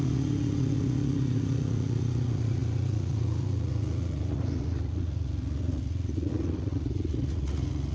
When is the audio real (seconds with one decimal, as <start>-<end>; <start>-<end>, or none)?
none